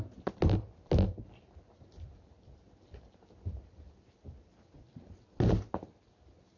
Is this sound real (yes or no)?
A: yes